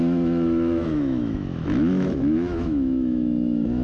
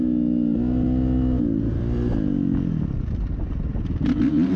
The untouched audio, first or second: second